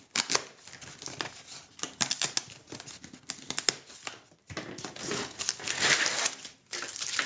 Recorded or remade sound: recorded